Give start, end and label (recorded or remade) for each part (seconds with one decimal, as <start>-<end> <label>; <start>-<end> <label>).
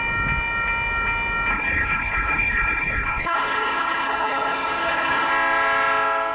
0.0-1.5 recorded; 1.5-5.3 remade; 5.3-6.3 recorded